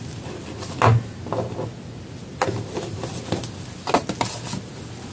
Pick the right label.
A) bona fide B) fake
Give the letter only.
A